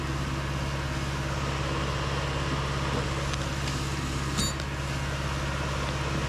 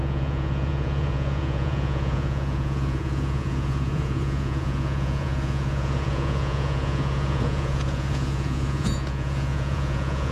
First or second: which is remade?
second